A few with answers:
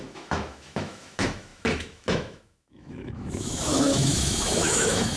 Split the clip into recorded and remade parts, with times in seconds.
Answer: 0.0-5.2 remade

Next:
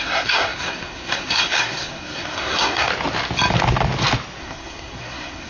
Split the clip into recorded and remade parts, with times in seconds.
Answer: 0.0-2.9 remade; 2.9-4.4 recorded; 4.4-5.5 remade

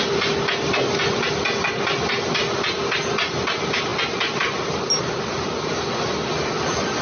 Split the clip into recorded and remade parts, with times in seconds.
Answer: 0.0-7.0 recorded

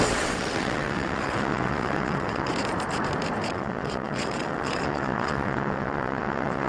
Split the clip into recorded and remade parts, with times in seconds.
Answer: 0.0-2.5 remade; 2.5-3.5 recorded; 3.5-6.7 remade

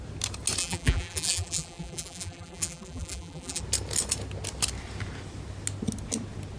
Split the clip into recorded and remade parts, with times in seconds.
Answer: 0.0-0.6 recorded; 0.6-3.6 remade; 3.6-6.6 recorded

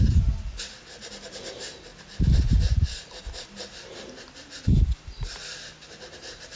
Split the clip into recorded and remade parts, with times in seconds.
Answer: 0.0-6.6 recorded

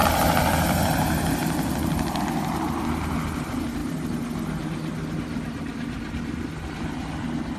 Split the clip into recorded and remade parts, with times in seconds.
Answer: 0.0-7.6 recorded

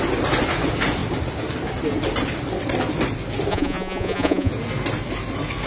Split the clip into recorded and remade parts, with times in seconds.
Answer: 0.0-3.5 recorded; 3.5-4.5 remade; 4.5-5.7 recorded